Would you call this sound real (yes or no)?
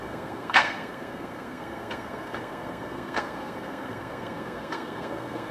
no